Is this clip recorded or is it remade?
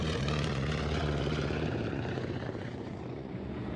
remade